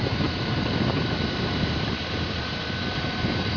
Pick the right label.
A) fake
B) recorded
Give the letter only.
A